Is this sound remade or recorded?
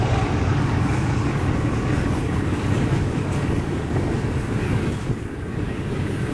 remade